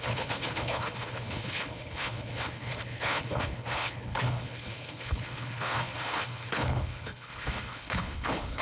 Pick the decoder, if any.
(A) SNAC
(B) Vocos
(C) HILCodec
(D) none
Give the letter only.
C